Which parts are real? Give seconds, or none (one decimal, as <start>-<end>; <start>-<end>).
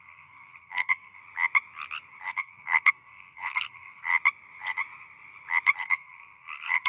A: 1.2-2.3; 4.1-5.8